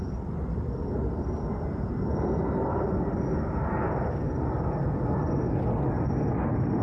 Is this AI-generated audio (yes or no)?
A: no